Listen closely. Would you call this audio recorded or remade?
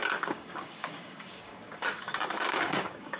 remade